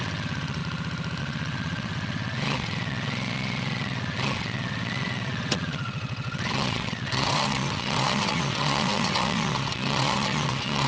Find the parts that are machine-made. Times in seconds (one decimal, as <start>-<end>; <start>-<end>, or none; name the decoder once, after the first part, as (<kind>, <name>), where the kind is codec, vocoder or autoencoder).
0.0-0.6 (vocoder, WaveNeXt); 1.2-10.9